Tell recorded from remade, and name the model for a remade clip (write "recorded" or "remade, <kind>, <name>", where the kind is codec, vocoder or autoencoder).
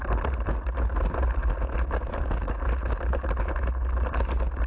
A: recorded